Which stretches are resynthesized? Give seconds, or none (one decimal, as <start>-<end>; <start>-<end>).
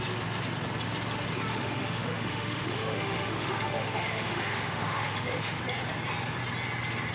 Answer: 1.5-5.6